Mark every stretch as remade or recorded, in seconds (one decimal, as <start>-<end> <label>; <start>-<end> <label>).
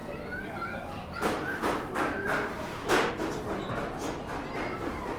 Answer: 0.0-3.1 remade; 3.1-5.2 recorded